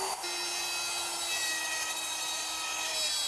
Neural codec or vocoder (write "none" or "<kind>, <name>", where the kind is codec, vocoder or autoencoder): none